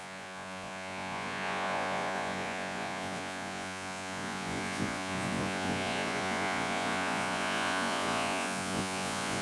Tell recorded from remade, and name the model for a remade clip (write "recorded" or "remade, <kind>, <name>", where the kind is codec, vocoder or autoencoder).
remade, vocoder, Vocos